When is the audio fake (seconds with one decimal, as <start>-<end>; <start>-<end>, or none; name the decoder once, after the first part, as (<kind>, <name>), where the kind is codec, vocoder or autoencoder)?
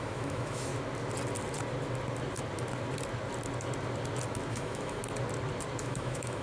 0.0-0.7 (autoencoder, DAC-VAE); 4.5-5.0; 5.8-6.4